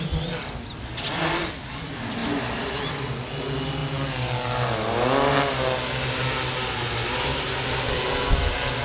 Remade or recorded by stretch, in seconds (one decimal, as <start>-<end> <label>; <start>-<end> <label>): 0.0-8.8 recorded